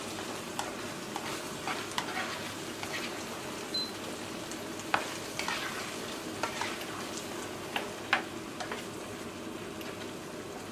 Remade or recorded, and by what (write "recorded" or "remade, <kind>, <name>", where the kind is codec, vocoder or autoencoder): recorded